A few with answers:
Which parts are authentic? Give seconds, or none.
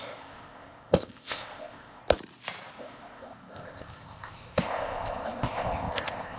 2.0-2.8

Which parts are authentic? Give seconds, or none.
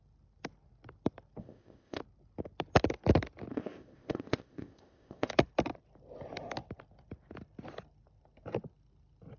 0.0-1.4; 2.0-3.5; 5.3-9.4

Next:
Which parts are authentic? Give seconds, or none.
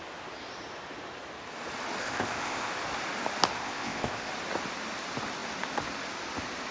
0.0-2.0; 2.7-3.5; 4.3-6.7